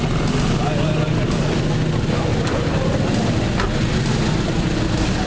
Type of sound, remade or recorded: recorded